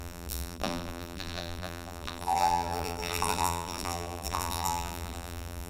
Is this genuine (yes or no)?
no